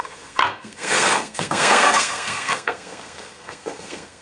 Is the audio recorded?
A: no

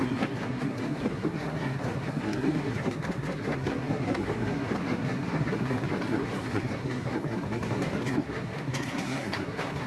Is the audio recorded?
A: no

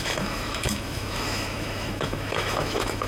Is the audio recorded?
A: no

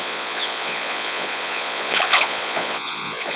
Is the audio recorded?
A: no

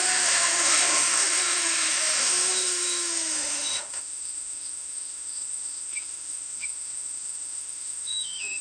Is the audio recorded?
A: no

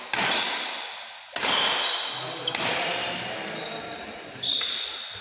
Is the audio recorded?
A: yes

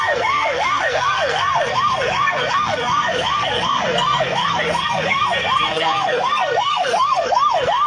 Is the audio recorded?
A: no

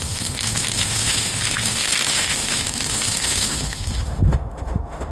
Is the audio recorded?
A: no